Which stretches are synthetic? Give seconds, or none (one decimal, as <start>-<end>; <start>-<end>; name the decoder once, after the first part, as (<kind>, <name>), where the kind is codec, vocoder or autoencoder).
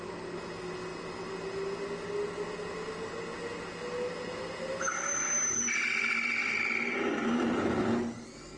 none